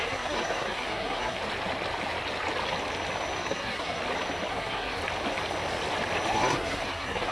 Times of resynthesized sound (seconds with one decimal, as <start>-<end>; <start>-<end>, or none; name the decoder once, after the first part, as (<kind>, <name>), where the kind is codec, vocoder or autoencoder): 0.0-1.4 (codec, SNAC); 3.4-4.0; 4.5-5.0; 6.3-7.3